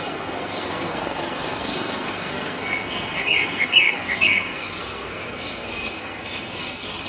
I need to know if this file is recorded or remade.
remade